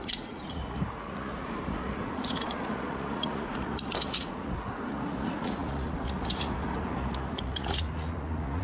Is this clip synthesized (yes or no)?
yes